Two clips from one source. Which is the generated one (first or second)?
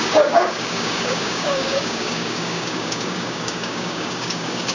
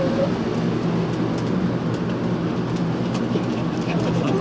first